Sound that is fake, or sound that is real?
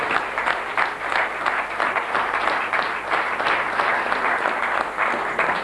real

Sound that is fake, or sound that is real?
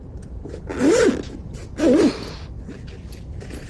real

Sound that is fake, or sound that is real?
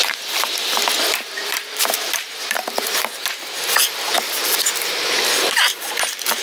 fake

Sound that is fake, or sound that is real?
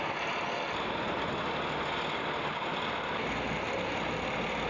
real